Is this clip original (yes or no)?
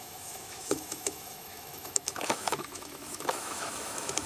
no